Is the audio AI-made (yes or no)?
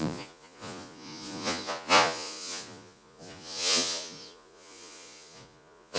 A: yes